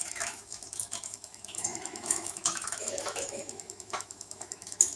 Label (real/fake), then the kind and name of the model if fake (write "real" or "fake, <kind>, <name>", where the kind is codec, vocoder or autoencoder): fake, autoencoder, DAC-VAE